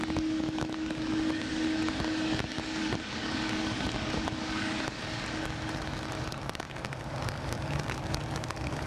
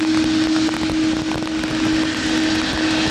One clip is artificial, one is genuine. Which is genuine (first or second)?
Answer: second